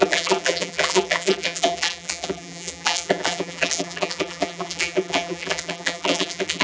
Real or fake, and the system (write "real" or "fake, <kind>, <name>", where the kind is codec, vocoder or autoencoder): fake, vocoder, BigVGAN v2